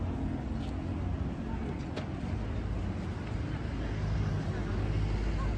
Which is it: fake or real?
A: real